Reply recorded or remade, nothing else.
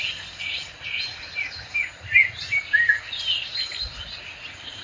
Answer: recorded